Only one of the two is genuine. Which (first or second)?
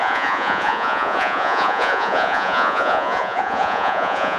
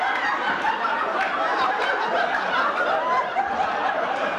second